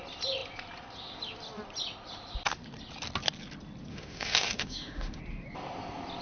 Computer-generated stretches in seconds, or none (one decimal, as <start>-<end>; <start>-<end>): 3.9-5.2